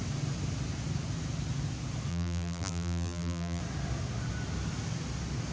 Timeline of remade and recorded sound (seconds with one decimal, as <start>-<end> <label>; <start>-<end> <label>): 0.0-2.1 recorded; 2.1-3.6 remade; 3.6-5.5 recorded